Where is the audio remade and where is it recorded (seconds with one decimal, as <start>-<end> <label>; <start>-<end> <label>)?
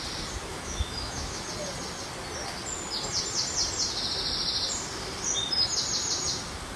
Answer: 0.0-0.5 recorded; 0.5-1.4 remade; 1.4-6.8 recorded